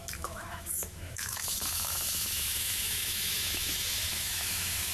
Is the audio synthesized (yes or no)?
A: yes